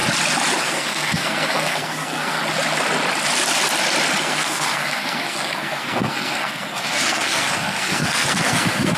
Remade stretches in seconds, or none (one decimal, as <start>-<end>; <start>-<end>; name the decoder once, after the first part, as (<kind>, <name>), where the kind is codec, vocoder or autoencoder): 0.6-2.4 (codec, SNAC); 4.2-9.0